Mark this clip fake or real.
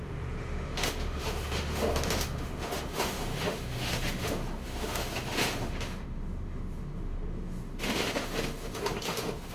fake